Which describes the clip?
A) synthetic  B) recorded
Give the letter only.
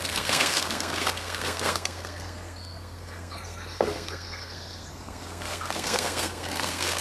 A